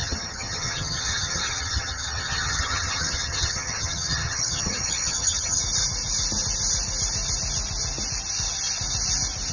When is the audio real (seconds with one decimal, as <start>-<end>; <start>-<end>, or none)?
5.6-9.5